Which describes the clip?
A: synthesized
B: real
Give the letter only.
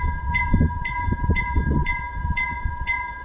A